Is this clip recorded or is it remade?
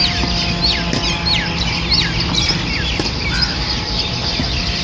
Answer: recorded